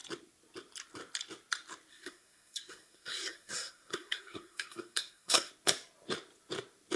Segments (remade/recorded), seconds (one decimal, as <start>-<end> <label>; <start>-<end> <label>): 0.0-1.9 recorded; 1.9-5.5 remade; 5.5-7.0 recorded